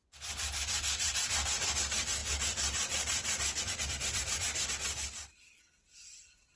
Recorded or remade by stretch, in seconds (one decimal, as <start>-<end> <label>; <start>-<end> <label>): 0.0-6.6 recorded